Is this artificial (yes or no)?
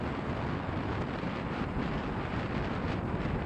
no